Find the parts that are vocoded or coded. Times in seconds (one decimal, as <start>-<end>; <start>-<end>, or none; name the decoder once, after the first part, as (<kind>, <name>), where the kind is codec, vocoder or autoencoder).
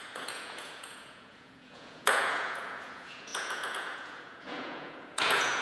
0.0-5.6 (vocoder, Vocos)